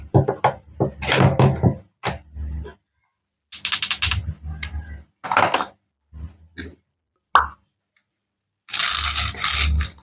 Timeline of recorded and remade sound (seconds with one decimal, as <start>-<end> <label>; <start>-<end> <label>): 0.0-10.0 recorded